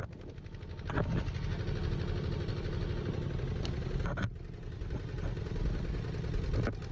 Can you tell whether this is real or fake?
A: real